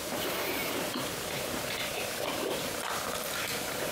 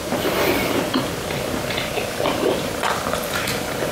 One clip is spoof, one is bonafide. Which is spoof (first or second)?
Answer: first